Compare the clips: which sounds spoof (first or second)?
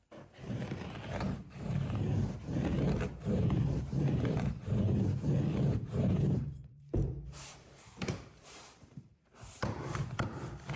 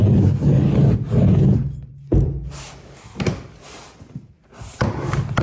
first